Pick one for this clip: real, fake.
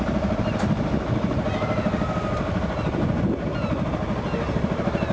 real